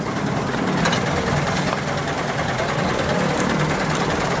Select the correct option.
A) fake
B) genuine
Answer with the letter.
B